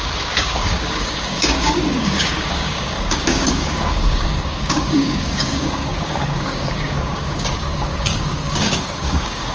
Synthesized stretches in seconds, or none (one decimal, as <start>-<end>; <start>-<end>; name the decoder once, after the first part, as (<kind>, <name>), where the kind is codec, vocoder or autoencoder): 0.0-9.5 (codec, DAC)